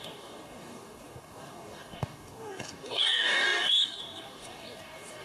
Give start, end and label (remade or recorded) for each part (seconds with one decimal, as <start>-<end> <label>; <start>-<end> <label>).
0.0-5.2 remade